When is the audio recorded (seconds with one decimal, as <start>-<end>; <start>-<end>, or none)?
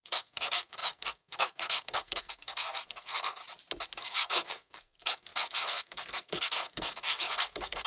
3.4-4.0